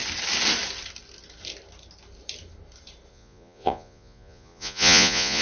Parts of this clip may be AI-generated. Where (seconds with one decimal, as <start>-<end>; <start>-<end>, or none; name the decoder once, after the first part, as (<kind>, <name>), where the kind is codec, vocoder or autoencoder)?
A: 3.1-5.4 (vocoder, Vocos)